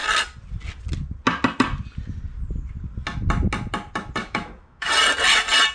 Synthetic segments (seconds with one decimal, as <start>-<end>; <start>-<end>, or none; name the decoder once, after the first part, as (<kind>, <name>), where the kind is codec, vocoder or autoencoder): 4.2-4.9 (autoencoder, DAC-VAE)